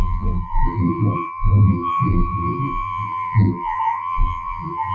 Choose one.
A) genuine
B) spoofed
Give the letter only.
B